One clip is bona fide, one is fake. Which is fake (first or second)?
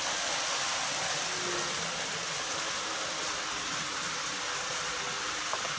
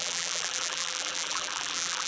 second